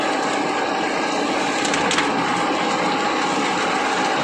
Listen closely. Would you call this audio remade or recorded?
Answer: recorded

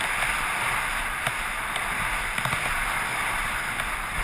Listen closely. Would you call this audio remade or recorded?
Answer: recorded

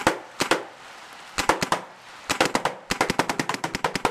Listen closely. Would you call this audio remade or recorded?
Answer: remade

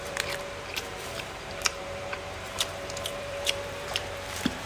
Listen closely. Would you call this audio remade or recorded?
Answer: remade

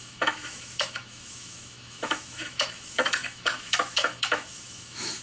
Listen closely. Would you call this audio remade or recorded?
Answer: remade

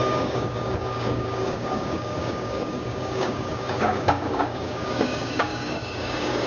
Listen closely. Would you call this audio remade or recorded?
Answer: remade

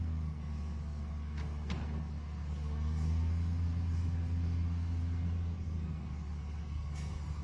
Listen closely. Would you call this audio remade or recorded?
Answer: remade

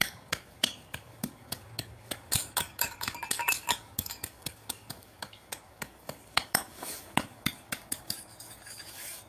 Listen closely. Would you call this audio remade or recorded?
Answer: remade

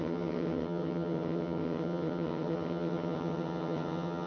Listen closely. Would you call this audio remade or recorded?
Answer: remade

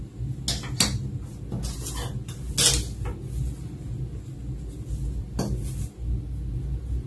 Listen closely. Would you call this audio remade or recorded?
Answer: recorded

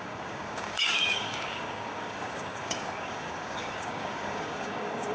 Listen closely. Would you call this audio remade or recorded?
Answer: remade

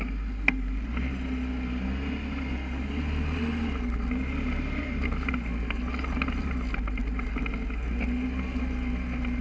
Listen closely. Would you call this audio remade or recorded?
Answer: recorded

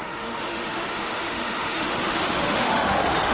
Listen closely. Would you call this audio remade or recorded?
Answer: remade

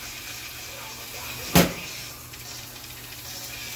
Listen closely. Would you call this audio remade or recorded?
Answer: recorded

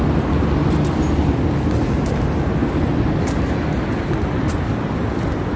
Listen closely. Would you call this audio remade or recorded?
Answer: recorded